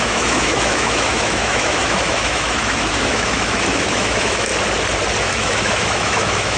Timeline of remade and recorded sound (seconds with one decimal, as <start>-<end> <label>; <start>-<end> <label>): 0.0-4.5 remade; 4.5-5.2 recorded; 5.2-6.6 remade